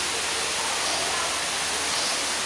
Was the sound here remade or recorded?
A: recorded